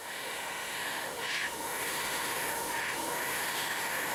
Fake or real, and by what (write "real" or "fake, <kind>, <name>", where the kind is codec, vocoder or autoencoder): fake, autoencoder, DAC-VAE